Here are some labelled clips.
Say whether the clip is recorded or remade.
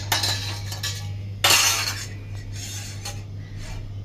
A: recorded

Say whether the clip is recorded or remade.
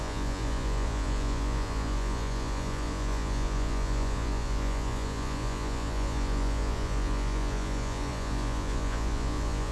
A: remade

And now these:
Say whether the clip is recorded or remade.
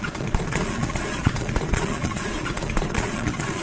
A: remade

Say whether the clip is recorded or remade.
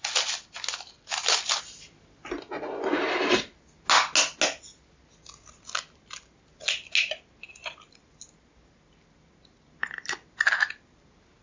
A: recorded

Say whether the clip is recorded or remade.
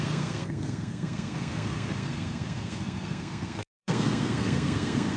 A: remade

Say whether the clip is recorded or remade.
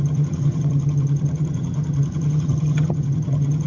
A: remade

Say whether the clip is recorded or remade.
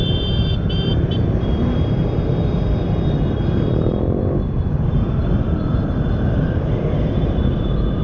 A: remade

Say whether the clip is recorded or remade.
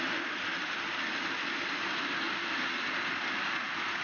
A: recorded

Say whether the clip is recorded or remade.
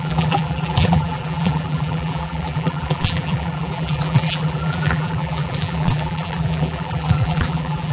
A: remade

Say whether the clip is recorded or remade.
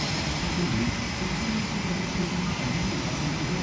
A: recorded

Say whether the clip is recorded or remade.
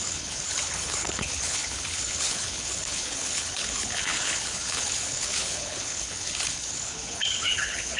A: remade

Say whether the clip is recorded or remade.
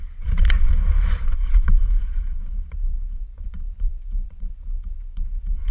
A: remade